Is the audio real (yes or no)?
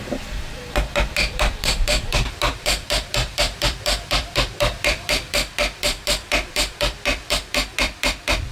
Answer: no